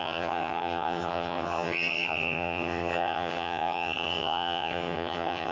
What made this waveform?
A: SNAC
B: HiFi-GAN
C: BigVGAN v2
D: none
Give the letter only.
B